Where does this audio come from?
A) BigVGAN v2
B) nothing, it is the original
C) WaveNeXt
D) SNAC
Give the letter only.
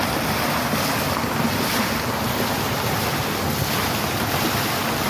B